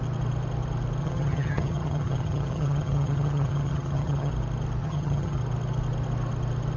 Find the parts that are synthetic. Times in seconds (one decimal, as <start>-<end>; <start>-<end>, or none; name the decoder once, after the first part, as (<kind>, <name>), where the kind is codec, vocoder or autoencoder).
1.0-4.3 (vocoder, HiFi-GAN); 4.8-5.4